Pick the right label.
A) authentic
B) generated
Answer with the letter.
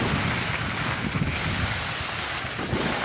A